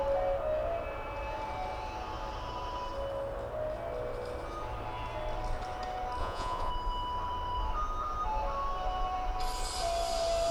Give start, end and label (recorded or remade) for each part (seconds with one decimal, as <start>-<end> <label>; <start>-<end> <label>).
0.0-6.2 recorded; 6.2-6.7 remade; 6.7-10.5 recorded